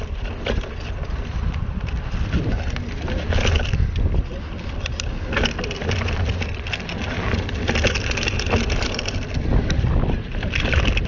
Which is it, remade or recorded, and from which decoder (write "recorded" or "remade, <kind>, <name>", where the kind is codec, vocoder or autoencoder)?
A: recorded